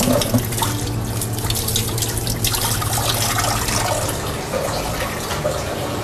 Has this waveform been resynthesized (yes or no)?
no